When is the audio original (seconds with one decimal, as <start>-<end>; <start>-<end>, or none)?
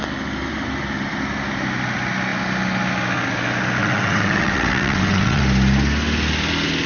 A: 0.0-3.8; 5.4-6.9